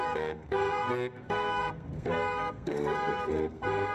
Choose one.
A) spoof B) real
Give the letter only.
A